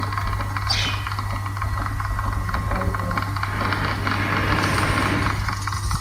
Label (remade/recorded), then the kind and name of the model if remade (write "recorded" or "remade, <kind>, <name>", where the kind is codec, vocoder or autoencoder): recorded